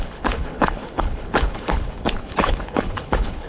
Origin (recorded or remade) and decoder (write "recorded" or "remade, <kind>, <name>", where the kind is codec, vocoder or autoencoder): remade, codec, HILCodec